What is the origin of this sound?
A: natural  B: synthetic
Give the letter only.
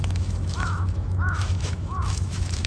B